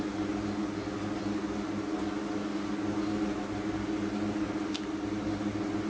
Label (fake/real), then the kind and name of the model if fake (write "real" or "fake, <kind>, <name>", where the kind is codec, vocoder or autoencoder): real